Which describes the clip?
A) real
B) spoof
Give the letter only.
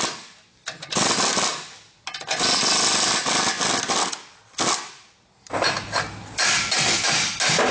A